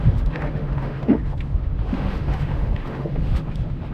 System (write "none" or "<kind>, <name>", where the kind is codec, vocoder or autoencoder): autoencoder, DAC-VAE